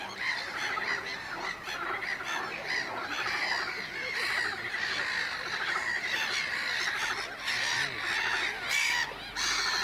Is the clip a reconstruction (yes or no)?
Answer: no